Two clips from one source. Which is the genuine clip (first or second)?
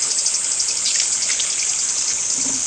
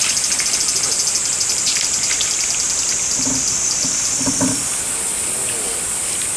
second